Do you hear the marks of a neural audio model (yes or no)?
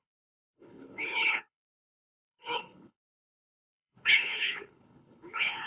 yes